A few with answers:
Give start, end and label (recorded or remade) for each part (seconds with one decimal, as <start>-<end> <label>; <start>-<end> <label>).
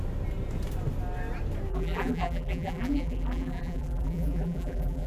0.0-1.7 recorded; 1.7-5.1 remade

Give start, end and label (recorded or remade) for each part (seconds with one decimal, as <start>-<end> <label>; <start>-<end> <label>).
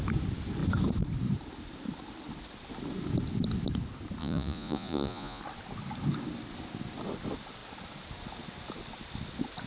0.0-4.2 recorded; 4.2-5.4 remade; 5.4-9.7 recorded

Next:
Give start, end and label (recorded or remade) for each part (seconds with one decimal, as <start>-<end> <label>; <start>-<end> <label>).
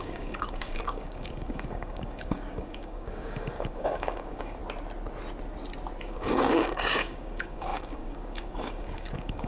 0.0-4.6 remade; 4.6-6.0 recorded; 6.0-9.5 remade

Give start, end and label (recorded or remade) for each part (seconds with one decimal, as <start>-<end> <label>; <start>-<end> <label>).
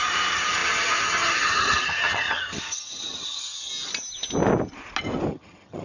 0.0-3.7 remade; 3.7-5.3 recorded; 5.3-5.8 remade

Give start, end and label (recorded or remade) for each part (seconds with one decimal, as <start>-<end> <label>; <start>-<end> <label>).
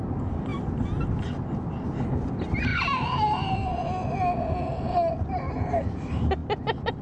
0.0-7.0 recorded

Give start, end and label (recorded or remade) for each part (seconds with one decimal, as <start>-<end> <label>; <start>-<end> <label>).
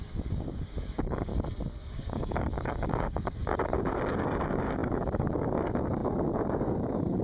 0.0-1.3 remade; 1.3-1.9 recorded; 1.9-7.2 remade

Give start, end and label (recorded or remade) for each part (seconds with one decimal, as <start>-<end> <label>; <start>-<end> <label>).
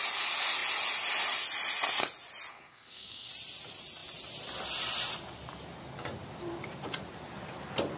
0.0-2.5 recorded; 2.5-3.3 remade; 3.3-8.0 recorded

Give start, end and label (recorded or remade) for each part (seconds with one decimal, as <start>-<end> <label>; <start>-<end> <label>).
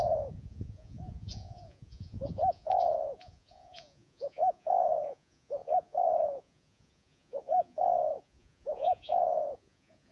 0.0-10.1 remade